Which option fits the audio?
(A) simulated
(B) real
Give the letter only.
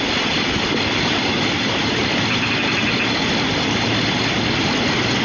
B